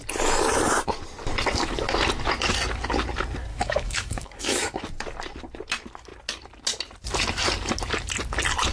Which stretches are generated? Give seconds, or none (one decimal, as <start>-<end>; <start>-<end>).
3.5-4.8